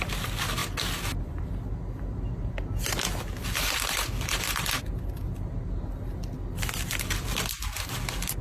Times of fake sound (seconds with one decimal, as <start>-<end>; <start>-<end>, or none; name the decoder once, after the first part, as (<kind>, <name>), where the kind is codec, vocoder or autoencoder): none